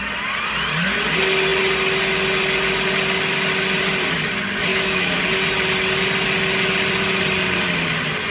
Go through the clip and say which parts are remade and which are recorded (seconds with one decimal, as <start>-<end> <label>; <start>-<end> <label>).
0.0-4.7 recorded; 4.7-5.2 remade; 5.2-8.3 recorded